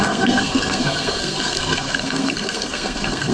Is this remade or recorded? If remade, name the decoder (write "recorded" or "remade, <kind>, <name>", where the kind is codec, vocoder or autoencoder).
remade, codec, SNAC